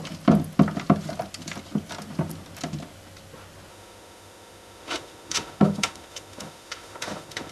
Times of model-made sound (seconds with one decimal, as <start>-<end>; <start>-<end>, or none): 3.7-7.5